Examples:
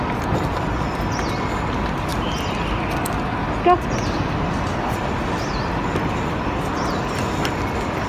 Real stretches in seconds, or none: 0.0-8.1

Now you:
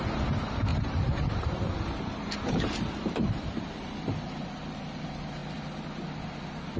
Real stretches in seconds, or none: 0.0-0.7; 4.8-6.8

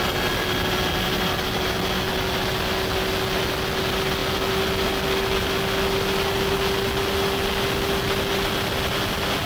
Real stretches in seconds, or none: 0.0-9.5

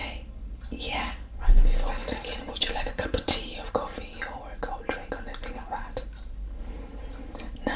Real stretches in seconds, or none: 0.0-2.0; 3.7-7.8

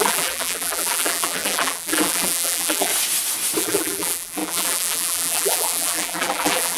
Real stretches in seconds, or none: 2.9-3.6

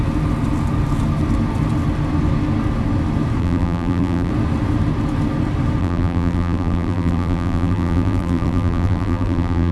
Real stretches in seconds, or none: 0.0-3.4; 4.3-5.8